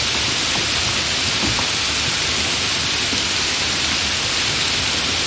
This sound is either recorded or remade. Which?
recorded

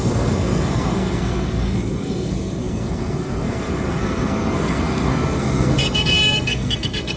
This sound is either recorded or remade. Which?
remade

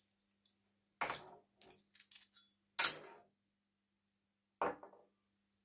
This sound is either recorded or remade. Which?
recorded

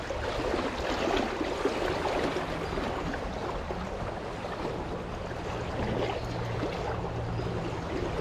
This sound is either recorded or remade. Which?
recorded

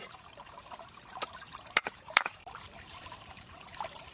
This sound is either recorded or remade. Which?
remade